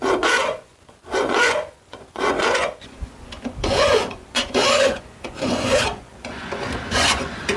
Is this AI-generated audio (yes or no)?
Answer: yes